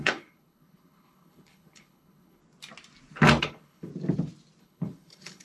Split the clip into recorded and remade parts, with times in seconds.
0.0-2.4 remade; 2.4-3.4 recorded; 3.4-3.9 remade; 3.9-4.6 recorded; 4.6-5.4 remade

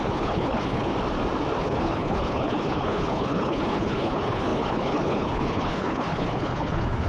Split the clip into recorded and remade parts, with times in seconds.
0.0-0.9 remade; 0.9-1.6 recorded; 1.6-7.1 remade

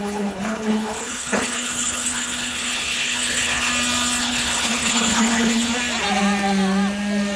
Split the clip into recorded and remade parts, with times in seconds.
0.0-3.7 remade; 3.7-4.2 recorded; 4.2-5.7 remade; 5.7-7.4 recorded

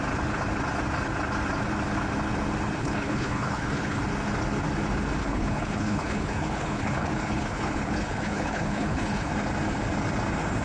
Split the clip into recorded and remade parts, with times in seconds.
0.0-2.8 recorded; 2.8-4.0 remade; 4.0-5.2 recorded; 5.2-9.3 remade; 9.3-10.6 recorded

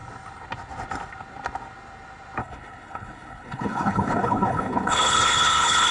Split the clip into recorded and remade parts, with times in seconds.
0.0-2.4 recorded; 2.4-5.9 remade

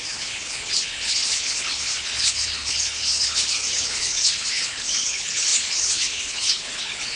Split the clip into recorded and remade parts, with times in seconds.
0.0-7.2 remade

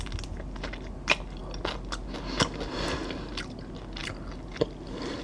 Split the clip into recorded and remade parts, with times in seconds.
0.0-5.2 recorded